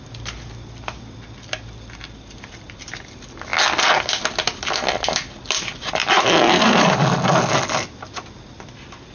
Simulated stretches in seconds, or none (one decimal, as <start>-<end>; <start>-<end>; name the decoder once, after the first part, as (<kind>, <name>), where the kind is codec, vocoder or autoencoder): none